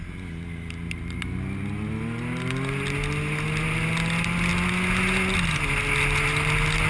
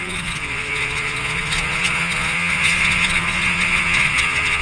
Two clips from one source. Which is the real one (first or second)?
first